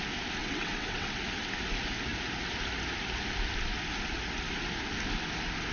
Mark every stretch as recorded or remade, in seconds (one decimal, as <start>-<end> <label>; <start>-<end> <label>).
0.0-0.4 recorded; 0.4-1.2 remade; 1.2-5.7 recorded